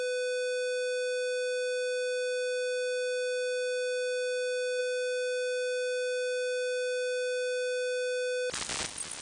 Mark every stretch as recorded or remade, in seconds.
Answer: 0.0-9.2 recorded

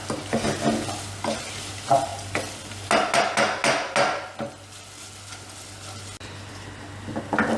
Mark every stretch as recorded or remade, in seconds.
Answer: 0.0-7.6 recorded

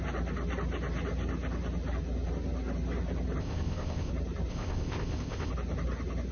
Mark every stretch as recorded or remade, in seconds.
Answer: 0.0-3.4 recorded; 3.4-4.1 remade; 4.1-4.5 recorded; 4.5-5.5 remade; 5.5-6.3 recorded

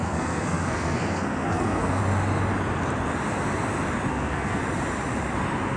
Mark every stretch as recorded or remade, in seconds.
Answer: 0.0-2.0 remade; 2.0-4.1 recorded; 4.1-4.6 remade; 4.6-5.8 recorded

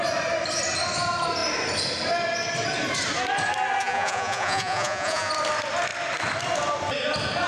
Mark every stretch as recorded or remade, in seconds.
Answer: 0.0-3.8 recorded; 3.8-5.3 remade; 5.3-7.5 recorded

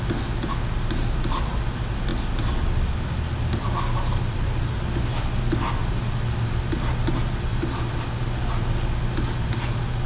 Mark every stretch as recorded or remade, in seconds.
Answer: 0.0-10.1 recorded